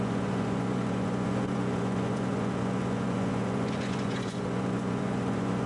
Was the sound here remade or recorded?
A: remade